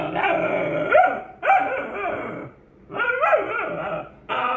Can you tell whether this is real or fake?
real